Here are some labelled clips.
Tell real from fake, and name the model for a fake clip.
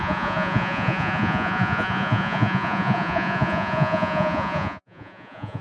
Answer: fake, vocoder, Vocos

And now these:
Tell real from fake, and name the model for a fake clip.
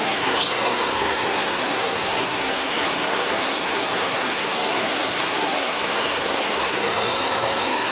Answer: fake, codec, SNAC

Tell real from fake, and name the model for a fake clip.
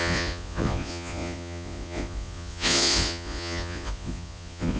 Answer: fake, vocoder, Vocos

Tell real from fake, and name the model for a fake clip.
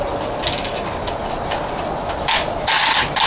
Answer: real